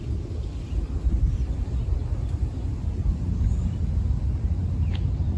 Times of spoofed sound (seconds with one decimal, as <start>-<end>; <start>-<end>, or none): none